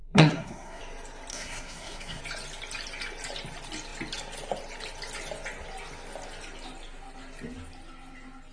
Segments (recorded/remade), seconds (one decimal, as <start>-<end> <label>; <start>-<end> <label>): 0.0-0.8 remade; 0.8-1.3 recorded; 1.3-2.2 remade; 2.2-8.5 recorded